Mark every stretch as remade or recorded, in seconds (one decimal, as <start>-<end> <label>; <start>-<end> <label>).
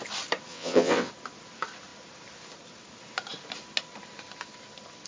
0.0-0.5 recorded; 0.5-1.1 remade; 1.1-5.1 recorded